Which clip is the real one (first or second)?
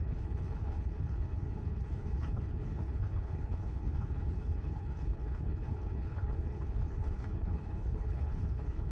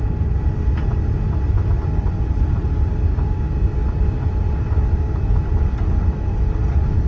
second